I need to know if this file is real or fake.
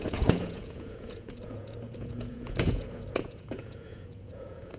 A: fake